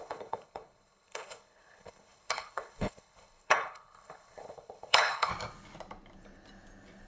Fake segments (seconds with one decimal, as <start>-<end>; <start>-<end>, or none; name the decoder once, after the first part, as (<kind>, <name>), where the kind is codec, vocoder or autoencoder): 0.0-5.3 (codec, HILCodec)